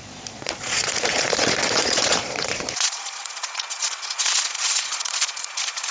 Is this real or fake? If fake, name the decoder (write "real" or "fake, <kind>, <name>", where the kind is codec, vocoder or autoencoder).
fake, vocoder, Vocos